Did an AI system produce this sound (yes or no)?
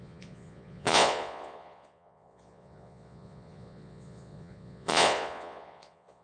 yes